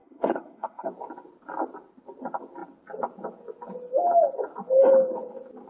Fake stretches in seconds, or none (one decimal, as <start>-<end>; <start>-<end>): 0.0-0.9